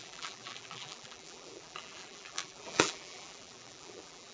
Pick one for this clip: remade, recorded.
remade